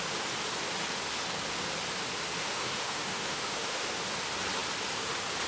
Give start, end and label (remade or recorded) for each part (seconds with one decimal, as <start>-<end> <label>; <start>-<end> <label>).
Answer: 0.0-2.4 recorded; 2.4-3.9 remade; 3.9-5.5 recorded